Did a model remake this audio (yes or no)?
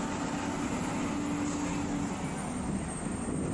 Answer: no